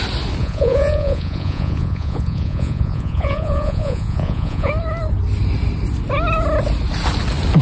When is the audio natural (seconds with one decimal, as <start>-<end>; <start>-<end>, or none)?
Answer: 0.0-0.4; 4.7-7.6